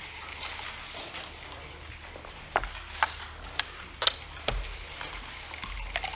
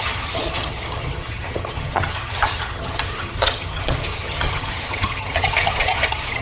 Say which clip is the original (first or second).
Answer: first